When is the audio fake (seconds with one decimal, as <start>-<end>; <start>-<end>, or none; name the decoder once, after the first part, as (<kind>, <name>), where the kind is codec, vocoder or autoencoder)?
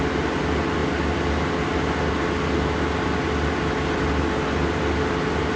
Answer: none